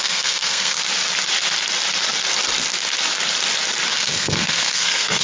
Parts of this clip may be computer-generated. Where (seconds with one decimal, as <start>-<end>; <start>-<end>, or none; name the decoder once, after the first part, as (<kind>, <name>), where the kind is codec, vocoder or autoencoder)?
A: 0.0-0.8 (codec, SNAC); 3.9-5.2